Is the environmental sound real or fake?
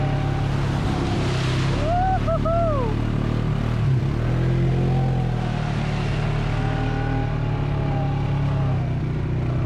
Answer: real